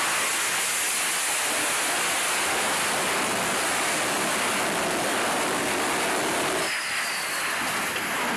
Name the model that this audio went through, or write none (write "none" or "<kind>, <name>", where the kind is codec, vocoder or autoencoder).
none